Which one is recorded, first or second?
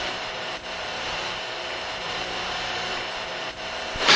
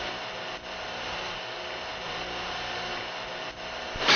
second